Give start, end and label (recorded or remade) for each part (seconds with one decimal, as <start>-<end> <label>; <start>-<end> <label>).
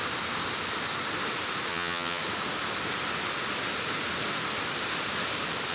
0.0-1.7 recorded; 1.7-2.2 remade; 2.2-5.7 recorded